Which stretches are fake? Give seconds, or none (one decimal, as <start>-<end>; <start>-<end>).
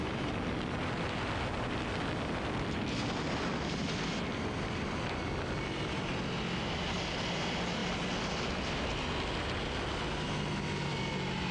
0.0-2.8; 3.8-6.0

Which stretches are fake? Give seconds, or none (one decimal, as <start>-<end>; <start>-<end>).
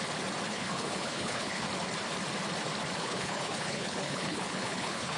0.5-1.6; 3.0-5.2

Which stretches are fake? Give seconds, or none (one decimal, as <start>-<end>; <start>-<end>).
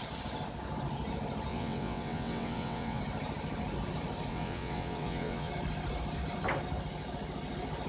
1.5-3.0; 4.3-5.5